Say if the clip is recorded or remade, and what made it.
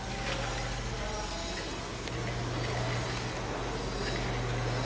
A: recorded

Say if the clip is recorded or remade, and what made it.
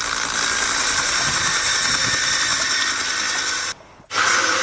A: recorded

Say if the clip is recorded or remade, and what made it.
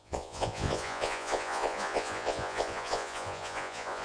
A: remade, vocoder, Vocos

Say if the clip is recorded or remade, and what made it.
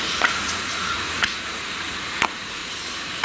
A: remade, vocoder, Vocos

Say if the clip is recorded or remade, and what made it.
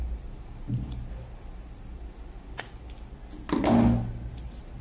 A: recorded